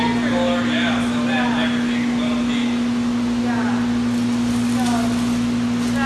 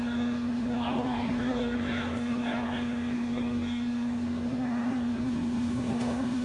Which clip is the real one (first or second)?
first